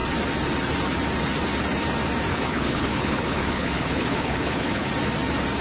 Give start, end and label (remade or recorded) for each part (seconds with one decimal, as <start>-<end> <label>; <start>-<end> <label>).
0.0-2.3 recorded; 2.3-4.9 remade; 4.9-5.6 recorded